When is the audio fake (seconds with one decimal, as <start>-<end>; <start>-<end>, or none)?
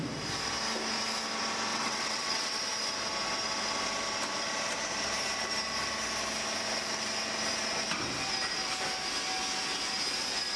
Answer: 1.7-2.6